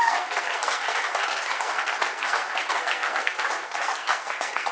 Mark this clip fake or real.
fake